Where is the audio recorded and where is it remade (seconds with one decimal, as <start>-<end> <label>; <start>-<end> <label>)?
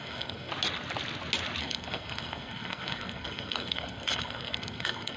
0.0-0.5 remade; 0.5-1.6 recorded; 1.6-5.2 remade